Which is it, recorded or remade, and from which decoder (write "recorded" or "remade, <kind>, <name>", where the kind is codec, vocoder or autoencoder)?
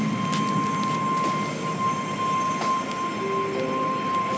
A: recorded